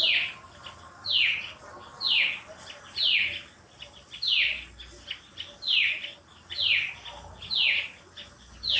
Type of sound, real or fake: real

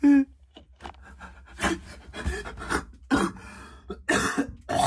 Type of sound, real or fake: real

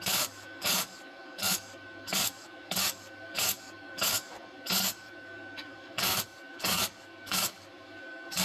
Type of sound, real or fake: fake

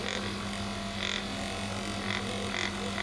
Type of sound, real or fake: real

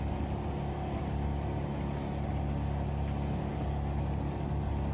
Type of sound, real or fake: real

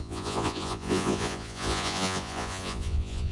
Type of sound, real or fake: fake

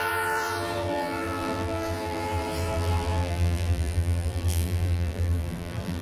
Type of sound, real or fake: fake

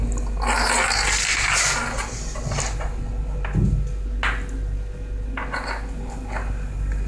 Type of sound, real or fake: real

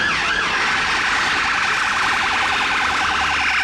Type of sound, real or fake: real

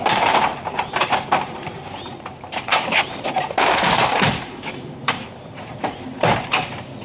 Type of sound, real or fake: fake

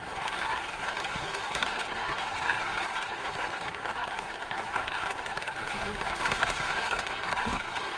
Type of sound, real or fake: fake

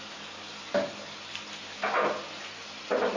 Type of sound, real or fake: real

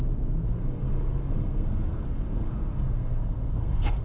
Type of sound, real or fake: fake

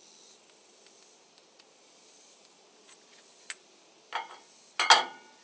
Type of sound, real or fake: real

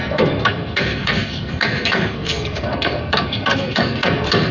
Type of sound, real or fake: fake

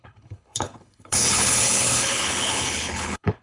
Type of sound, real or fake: fake